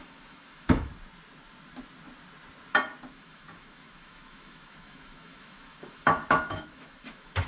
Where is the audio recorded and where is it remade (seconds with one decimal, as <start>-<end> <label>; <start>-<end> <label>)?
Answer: 0.0-0.9 remade; 0.9-3.1 recorded; 3.1-7.5 remade